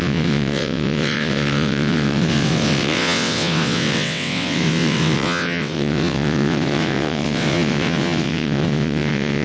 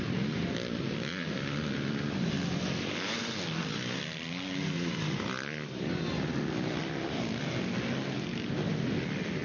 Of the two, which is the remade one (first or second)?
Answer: first